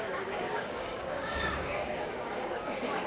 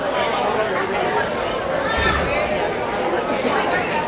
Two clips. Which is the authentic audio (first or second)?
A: second